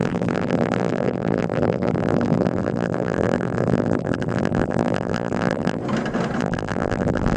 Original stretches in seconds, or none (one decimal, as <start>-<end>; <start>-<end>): 5.8-6.4